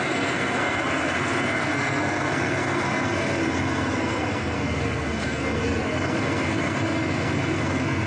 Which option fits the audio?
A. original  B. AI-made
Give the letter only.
B